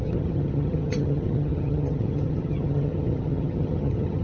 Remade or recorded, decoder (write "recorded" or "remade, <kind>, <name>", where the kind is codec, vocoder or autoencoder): remade, vocoder, HiFi-GAN